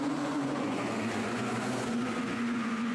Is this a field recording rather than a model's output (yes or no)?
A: no